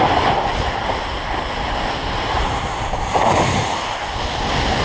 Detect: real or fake real